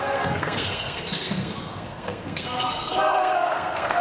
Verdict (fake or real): fake